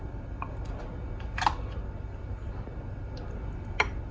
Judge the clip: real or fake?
real